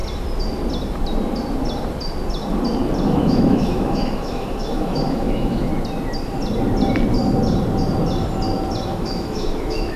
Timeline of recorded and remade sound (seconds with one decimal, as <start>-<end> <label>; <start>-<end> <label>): 0.0-3.0 recorded; 3.0-5.7 remade; 5.7-8.9 recorded; 8.9-10.0 remade